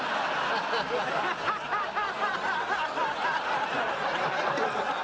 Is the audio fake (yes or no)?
no